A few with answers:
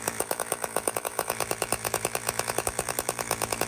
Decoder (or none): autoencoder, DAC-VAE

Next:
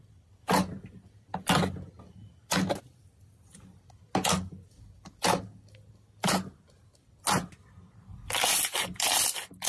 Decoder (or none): none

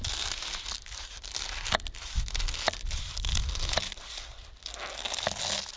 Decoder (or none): none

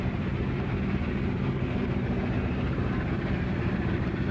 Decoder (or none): vocoder, BigVGAN v2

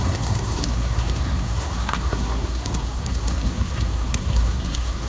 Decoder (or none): codec, SNAC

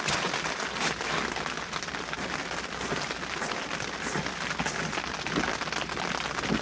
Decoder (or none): none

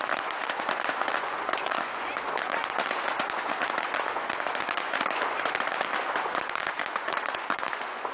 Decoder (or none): vocoder, Vocos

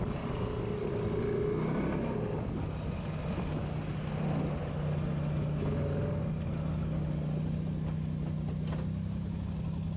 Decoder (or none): none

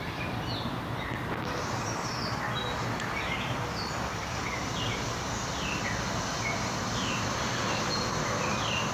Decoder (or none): none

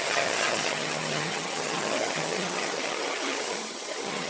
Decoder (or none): vocoder, HiFi-GAN